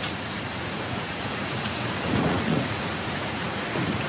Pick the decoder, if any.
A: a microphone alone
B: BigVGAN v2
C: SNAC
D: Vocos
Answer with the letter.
D